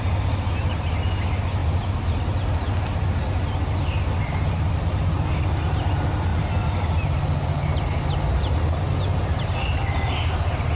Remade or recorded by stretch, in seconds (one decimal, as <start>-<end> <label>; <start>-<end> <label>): 0.0-10.8 recorded